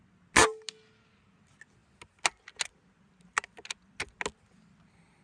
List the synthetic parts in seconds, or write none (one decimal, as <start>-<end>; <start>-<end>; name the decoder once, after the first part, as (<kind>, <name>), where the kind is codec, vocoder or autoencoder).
none